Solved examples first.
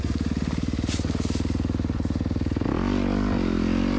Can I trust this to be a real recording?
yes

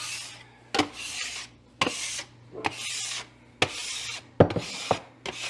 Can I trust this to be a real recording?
yes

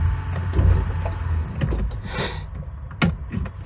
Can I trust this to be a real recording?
yes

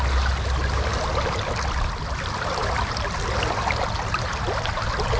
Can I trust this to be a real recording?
yes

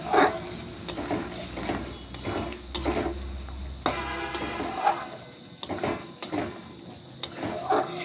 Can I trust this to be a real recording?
yes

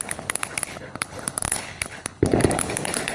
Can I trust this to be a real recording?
no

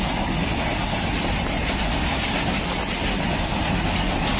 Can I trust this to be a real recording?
yes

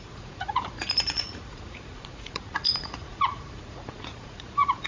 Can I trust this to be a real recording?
no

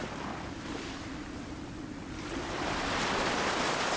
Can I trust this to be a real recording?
yes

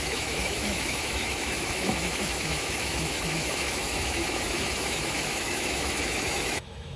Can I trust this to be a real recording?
no